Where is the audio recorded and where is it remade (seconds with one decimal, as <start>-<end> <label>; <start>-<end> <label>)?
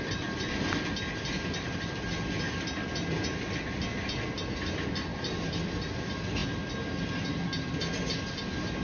0.0-8.8 recorded